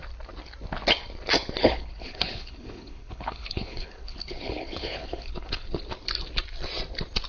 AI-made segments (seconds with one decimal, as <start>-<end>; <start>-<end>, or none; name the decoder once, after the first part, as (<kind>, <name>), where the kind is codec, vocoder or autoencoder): 1.6-5.8 (codec, HILCodec)